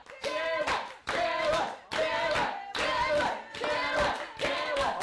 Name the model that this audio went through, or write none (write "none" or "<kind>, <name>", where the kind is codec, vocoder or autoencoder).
none